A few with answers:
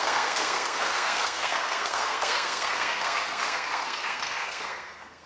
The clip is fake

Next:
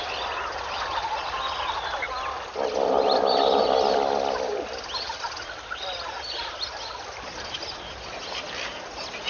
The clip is real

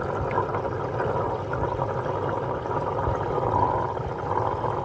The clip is real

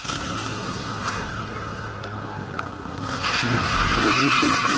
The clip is fake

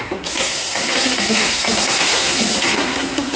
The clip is fake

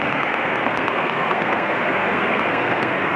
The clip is fake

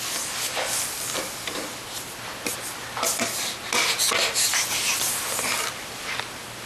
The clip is real